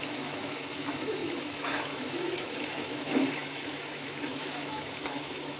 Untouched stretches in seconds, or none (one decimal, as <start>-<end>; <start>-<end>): none